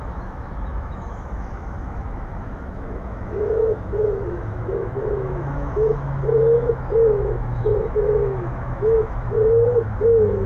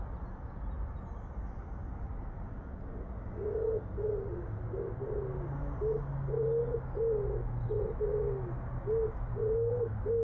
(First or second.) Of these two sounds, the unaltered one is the second